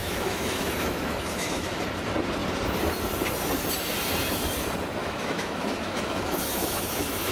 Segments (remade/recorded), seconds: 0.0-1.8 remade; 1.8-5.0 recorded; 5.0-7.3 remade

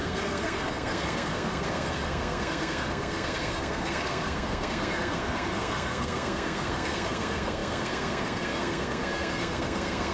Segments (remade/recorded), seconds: 0.0-10.1 remade

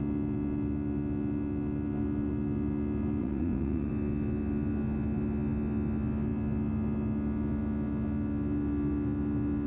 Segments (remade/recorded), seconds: 0.0-3.2 recorded; 3.2-3.9 remade; 3.9-9.7 recorded

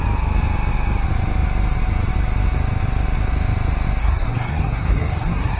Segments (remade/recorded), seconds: 0.0-4.0 recorded; 4.0-5.6 remade